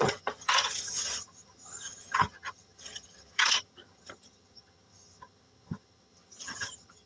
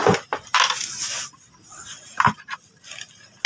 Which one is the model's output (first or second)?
first